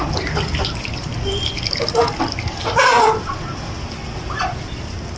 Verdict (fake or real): real